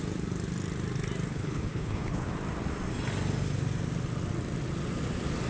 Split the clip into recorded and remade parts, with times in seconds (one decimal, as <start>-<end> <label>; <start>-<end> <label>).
0.0-1.3 recorded; 1.3-2.3 remade; 2.3-5.5 recorded